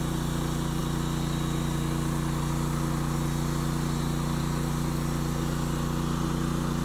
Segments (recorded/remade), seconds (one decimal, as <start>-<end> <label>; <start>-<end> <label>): 0.0-6.8 recorded

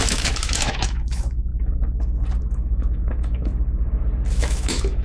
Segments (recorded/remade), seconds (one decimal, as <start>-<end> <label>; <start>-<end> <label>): 0.0-1.5 remade; 1.5-2.4 recorded; 2.4-3.5 remade; 3.5-4.3 recorded; 4.3-5.0 remade

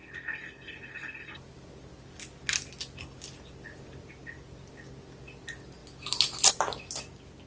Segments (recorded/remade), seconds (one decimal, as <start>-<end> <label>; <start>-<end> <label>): 0.0-7.5 recorded

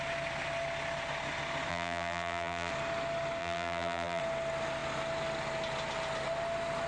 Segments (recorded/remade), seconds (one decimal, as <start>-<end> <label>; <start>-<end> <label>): 0.0-1.7 recorded; 1.7-2.7 remade; 2.7-3.4 recorded; 3.4-4.2 remade; 4.2-6.9 recorded